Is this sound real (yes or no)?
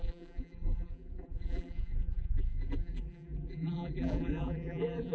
no